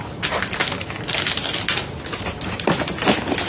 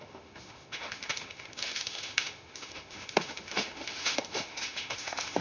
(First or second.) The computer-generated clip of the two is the second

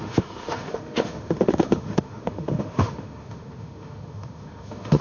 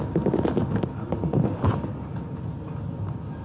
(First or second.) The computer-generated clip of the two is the first